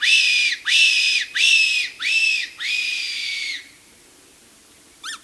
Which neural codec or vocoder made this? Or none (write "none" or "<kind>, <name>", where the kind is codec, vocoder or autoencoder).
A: none